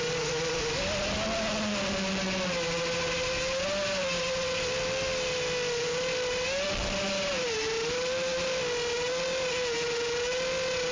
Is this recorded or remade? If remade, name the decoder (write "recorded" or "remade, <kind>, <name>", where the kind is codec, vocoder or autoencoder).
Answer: recorded